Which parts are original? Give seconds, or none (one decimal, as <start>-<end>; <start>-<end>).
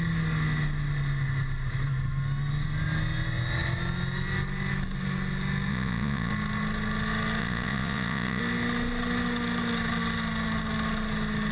0.0-5.7; 6.3-7.4; 8.4-11.5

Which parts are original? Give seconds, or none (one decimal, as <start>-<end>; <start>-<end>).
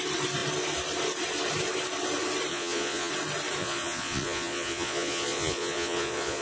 0.0-2.5; 3.1-3.6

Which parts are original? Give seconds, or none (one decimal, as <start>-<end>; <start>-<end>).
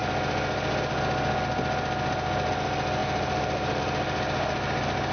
0.0-3.0; 3.8-5.1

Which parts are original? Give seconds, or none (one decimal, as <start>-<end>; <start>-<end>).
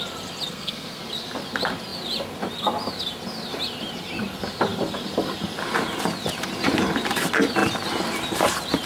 0.0-0.5; 1.0-8.9